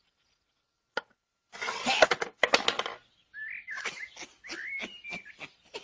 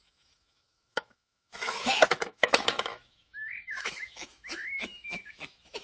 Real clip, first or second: first